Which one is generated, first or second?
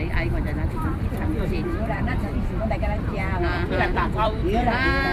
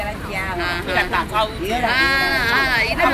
first